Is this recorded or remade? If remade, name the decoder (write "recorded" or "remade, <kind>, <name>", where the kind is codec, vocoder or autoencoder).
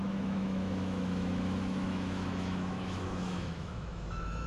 remade, autoencoder, DAC-VAE